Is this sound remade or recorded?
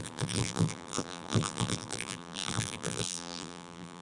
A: remade